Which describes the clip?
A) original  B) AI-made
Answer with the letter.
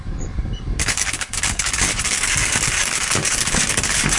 B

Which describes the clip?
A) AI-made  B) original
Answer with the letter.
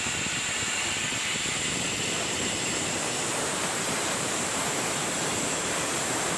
A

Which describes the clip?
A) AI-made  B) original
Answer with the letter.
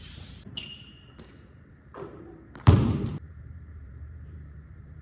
A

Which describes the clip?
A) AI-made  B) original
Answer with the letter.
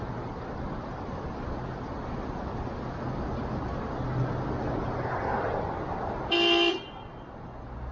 B